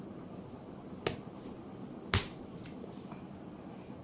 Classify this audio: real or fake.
real